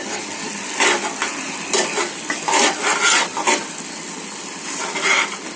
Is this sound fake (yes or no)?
no